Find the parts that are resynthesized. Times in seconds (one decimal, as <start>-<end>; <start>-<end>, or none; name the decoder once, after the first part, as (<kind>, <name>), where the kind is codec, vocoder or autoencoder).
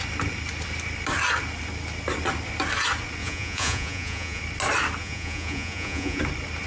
3.2-4.4 (vocoder, Vocos); 5.0-6.2